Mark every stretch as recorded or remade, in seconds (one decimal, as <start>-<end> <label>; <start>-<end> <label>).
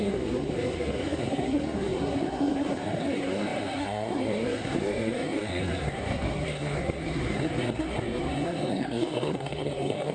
0.0-10.1 remade